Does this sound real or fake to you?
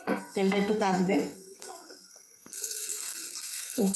fake